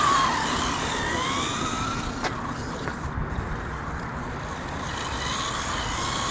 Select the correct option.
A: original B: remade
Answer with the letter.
B